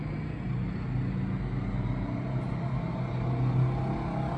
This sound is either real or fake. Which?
real